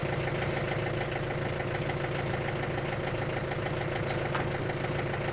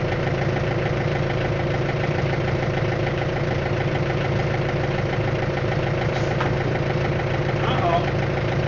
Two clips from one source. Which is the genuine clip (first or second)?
first